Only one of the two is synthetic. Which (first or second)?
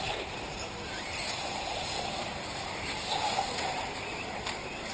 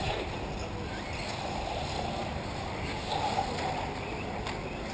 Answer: first